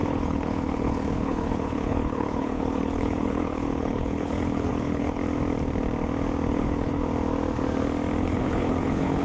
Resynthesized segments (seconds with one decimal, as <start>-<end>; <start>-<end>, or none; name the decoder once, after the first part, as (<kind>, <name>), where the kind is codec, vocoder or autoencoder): 0.0-5.2 (codec, HILCodec); 6.5-7.0; 8.2-9.2